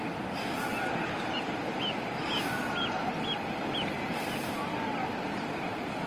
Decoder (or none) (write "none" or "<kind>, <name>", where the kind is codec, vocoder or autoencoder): none